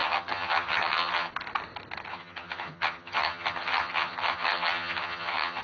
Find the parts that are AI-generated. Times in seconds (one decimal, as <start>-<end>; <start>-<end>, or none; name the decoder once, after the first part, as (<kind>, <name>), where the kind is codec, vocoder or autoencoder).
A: 0.0-1.3 (vocoder, HiFi-GAN); 2.1-5.6